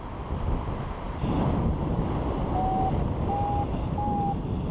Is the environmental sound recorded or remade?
recorded